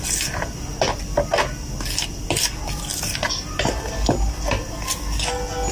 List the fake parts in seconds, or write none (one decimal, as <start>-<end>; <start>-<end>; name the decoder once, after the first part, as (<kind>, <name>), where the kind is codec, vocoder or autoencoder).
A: none